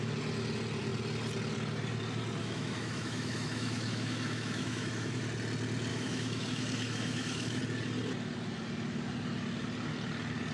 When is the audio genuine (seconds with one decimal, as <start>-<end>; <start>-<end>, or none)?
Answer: 0.0-2.4; 5.2-5.9; 7.6-10.5